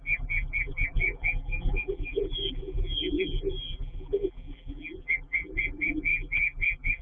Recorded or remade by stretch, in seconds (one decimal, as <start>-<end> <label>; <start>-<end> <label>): 0.0-7.0 remade